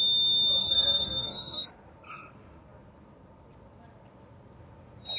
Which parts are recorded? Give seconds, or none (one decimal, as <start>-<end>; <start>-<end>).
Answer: 0.0-0.6; 1.7-5.2

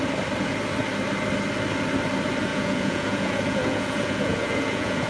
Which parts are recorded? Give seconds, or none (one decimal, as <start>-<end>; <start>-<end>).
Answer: 0.0-2.5

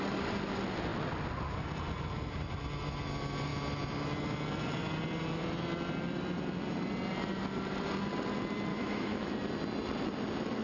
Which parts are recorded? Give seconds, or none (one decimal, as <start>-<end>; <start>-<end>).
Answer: 0.0-8.7; 9.3-10.6

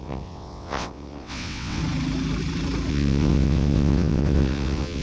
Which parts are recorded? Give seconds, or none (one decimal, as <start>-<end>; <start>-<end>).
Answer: 1.8-2.9

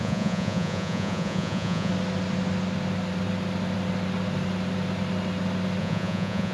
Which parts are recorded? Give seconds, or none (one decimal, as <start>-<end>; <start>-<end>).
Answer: 1.9-5.8

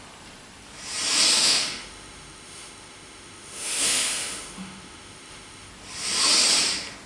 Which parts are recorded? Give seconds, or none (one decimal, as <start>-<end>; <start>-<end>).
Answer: 0.0-1.4; 5.7-7.1

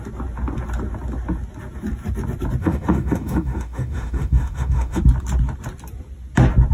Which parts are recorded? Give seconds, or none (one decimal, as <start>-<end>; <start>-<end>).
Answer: 0.0-2.6; 5.0-6.7

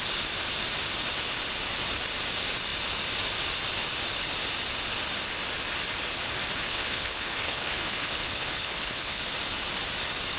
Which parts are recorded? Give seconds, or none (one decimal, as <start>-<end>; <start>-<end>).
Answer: 0.0-6.7; 9.2-10.4